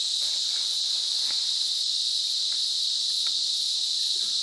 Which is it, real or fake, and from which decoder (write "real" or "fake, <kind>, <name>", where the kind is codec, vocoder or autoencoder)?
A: real